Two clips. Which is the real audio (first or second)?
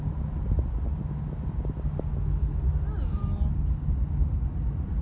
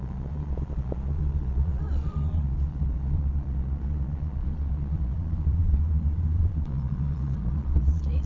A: first